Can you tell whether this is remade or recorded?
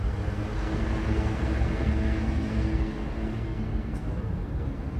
remade